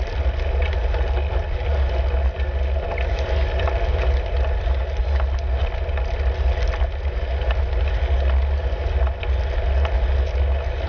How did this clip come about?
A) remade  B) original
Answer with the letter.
B